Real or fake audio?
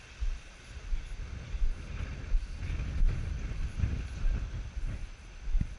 real